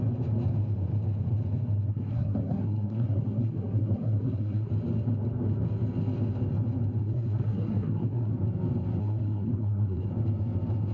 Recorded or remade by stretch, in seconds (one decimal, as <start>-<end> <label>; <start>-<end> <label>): 0.0-1.9 recorded; 1.9-4.7 remade; 4.7-7.0 recorded; 7.0-8.3 remade; 8.3-9.0 recorded; 9.0-10.1 remade; 10.1-10.9 recorded